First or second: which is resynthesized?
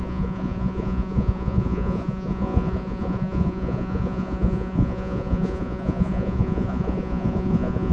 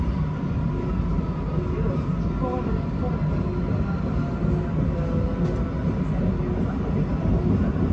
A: first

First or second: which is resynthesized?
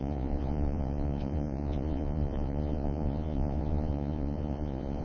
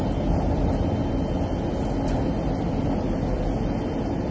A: first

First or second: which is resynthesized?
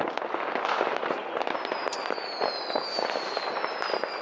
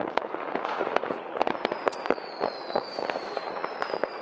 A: second